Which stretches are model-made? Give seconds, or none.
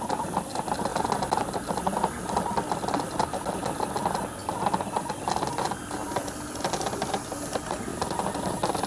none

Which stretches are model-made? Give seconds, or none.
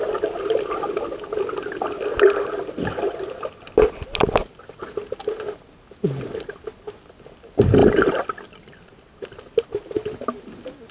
none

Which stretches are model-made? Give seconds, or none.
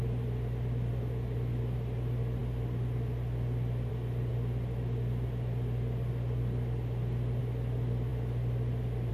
none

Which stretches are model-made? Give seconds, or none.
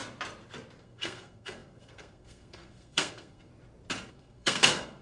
0.8-3.5 (codec, SNAC); 4.1-5.0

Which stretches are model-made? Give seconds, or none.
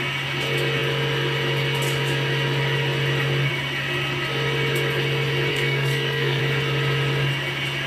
5.5-6.4 (codec, SNAC)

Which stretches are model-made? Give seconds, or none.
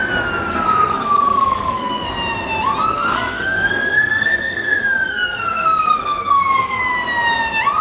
0.5-2.1 (codec, SNAC); 2.9-6.8